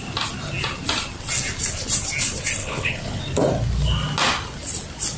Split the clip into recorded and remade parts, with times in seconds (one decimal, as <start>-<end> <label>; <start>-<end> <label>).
0.0-2.6 recorded; 2.6-3.2 remade; 3.2-5.2 recorded